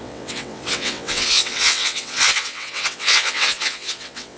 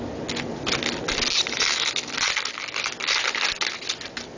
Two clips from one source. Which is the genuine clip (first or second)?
second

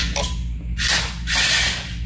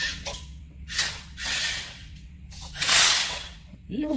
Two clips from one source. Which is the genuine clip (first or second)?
first